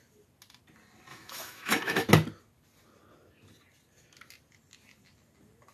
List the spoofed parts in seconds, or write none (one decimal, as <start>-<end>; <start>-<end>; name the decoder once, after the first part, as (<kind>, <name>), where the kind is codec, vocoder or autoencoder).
1.1-2.1 (autoencoder, DAC-VAE)